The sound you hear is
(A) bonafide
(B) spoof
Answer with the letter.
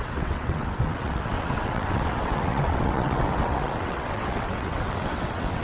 B